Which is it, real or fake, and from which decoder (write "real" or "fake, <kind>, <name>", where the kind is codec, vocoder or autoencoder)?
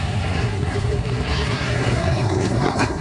fake, codec, SNAC